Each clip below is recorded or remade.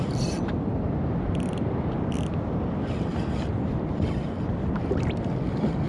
recorded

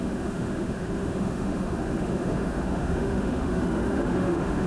remade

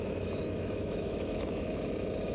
remade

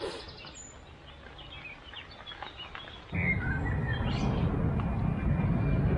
recorded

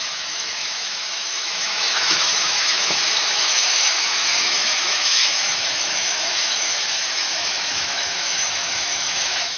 remade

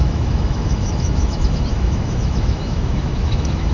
remade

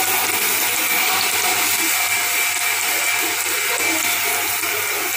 recorded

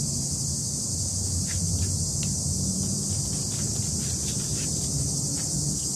recorded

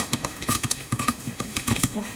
remade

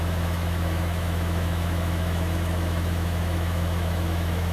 remade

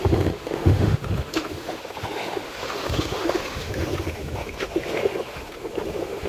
remade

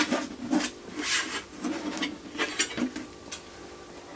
recorded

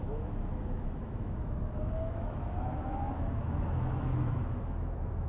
remade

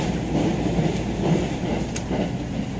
recorded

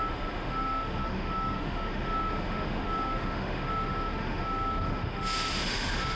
remade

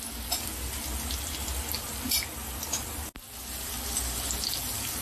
recorded